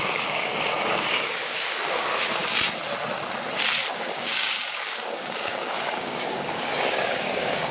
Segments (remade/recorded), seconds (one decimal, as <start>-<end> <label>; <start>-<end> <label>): 0.0-2.4 remade; 2.4-3.9 recorded; 3.9-7.7 remade